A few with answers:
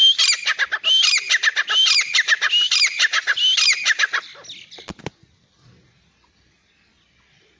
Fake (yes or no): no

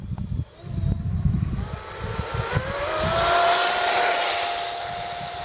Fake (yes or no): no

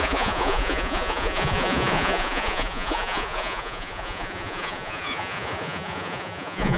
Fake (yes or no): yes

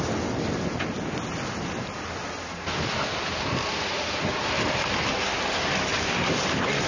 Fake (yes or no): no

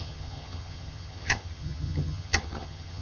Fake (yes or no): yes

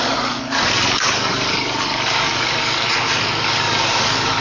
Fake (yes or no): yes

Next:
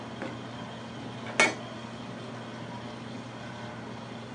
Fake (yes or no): no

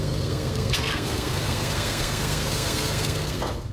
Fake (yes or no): yes